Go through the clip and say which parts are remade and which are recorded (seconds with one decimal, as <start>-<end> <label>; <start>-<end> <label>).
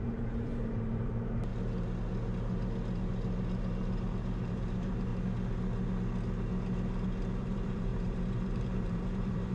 0.0-1.5 remade; 1.5-4.4 recorded; 4.4-5.1 remade; 5.1-7.4 recorded; 7.4-9.5 remade